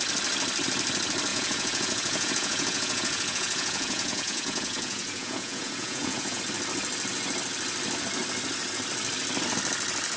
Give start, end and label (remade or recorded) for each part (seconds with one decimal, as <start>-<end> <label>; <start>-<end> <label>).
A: 0.0-1.3 recorded; 1.3-6.4 remade; 6.4-10.2 recorded